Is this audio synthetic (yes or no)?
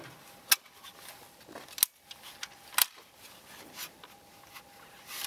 no